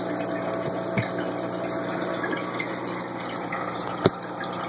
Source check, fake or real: real